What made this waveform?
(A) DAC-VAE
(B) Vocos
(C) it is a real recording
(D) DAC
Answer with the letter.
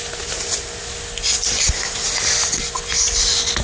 C